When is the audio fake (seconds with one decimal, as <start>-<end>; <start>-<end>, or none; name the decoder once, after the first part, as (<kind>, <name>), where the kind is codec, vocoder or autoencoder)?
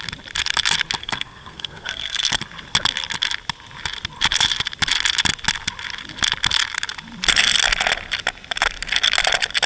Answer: 1.0-2.4 (codec, SNAC)